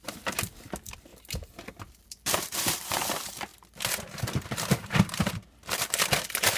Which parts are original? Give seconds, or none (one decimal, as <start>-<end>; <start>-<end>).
1.1-2.3; 3.5-4.2